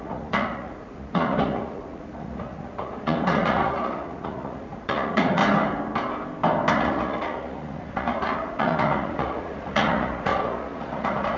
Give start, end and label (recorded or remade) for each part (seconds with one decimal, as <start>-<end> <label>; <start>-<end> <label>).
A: 0.0-5.4 remade; 5.4-6.7 recorded; 6.7-11.4 remade